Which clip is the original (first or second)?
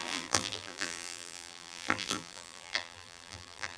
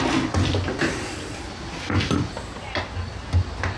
second